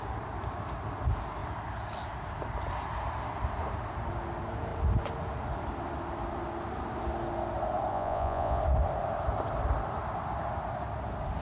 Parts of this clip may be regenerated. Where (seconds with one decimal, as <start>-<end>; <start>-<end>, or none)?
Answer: 7.9-8.6